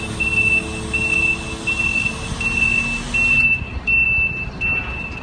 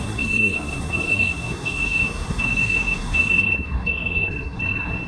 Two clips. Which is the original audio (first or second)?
first